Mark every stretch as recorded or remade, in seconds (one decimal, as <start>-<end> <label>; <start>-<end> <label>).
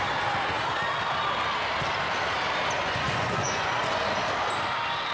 0.0-2.8 recorded; 2.8-4.0 remade; 4.0-5.1 recorded